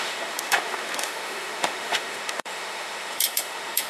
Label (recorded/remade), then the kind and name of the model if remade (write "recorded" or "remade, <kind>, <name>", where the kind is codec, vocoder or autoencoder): remade, autoencoder, DAC-VAE